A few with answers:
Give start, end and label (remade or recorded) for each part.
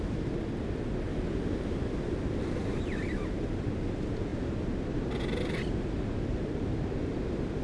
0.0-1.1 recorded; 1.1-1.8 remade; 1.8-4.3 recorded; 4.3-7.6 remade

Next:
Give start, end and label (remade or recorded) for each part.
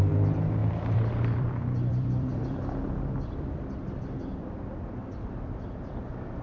0.0-0.6 recorded; 0.6-4.4 remade; 4.4-5.0 recorded; 5.0-6.0 remade; 6.0-6.4 recorded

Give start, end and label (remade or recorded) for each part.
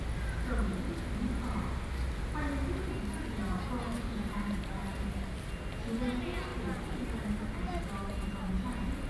0.0-6.5 recorded; 6.5-7.3 remade; 7.3-9.1 recorded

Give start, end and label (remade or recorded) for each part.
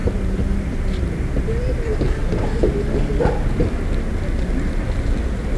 0.0-5.6 recorded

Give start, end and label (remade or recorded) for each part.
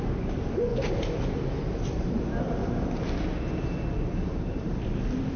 0.0-2.6 remade; 2.6-4.4 recorded; 4.4-5.4 remade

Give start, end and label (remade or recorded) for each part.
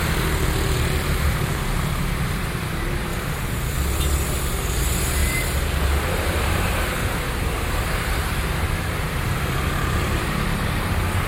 0.0-3.1 remade; 3.1-4.4 recorded; 4.4-5.2 remade; 5.2-6.4 recorded; 6.4-11.3 remade